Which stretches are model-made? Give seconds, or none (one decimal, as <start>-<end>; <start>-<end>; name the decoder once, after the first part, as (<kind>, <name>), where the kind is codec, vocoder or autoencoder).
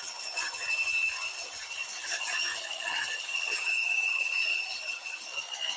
2.0-5.2 (vocoder, HiFi-GAN)